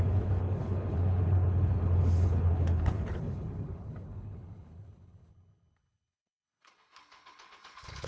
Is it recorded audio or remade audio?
remade